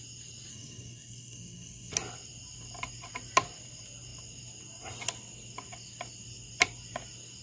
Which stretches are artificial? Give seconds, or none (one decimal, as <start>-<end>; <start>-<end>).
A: 0.5-1.9